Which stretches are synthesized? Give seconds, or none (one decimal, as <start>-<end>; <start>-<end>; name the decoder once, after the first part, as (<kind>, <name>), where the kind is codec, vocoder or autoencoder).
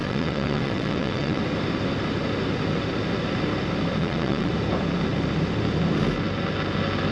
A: 0.0-1.4 (vocoder, WaveNeXt); 4.0-4.5